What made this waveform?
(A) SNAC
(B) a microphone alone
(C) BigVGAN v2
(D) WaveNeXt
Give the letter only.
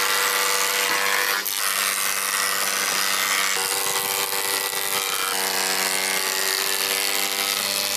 B